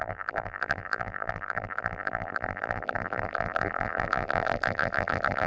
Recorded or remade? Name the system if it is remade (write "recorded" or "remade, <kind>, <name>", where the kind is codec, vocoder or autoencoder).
remade, vocoder, BigVGAN v2